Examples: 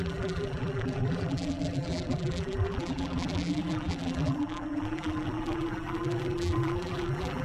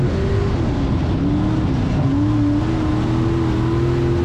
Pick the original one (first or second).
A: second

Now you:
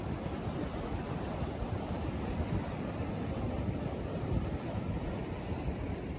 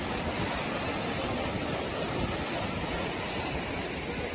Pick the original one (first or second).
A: second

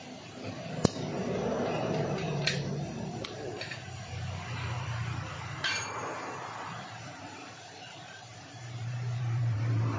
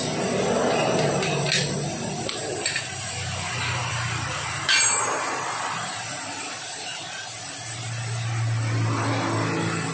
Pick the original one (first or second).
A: second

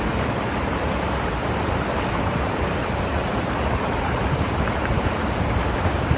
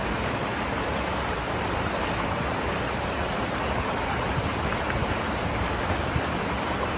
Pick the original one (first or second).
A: second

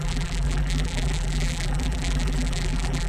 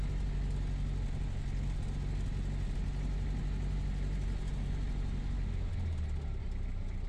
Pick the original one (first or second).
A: second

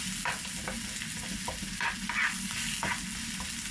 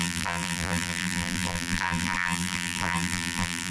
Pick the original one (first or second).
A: first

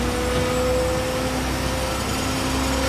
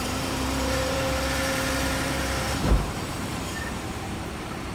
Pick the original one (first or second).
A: first